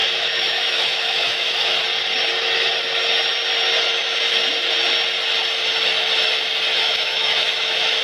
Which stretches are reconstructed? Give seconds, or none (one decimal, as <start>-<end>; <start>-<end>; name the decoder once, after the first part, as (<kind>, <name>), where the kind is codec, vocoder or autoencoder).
0.0-1.8 (autoencoder, DAC-VAE); 6.7-8.0